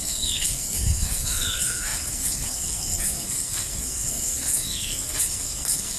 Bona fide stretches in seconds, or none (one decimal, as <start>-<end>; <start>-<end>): none